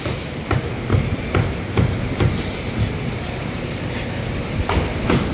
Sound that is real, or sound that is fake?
fake